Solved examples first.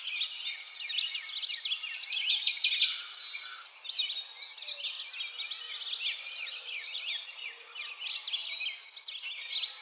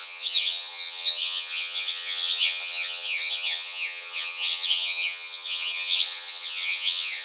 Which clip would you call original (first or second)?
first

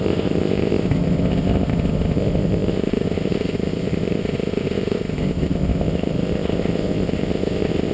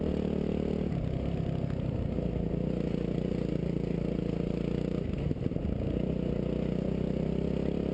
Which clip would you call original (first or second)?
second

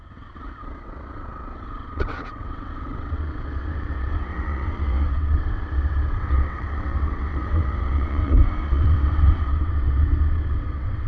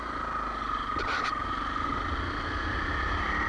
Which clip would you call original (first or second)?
second